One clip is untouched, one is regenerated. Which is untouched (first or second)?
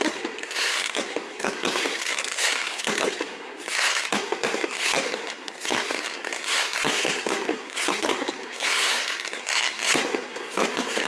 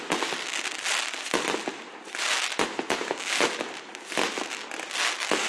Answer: second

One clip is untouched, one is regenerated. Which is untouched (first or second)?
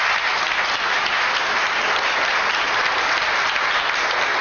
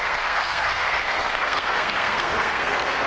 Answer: first